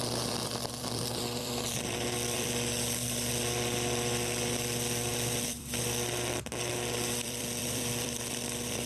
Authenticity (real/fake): fake